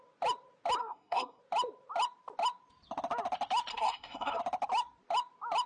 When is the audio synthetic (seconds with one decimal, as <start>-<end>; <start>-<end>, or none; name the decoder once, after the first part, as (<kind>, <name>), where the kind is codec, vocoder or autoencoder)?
0.8-1.4 (codec, SNAC); 3.7-4.4